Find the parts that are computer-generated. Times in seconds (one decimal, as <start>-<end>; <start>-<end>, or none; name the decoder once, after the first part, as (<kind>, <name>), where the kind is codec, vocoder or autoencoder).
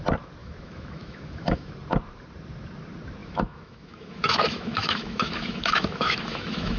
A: 0.4-1.7 (autoencoder, DAC-VAE); 3.2-6.8